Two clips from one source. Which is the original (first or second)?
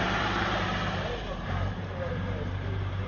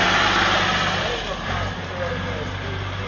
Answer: second